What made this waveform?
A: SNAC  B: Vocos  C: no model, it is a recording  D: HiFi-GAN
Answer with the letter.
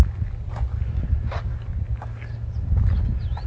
C